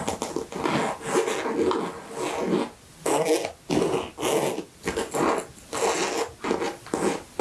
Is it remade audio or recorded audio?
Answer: recorded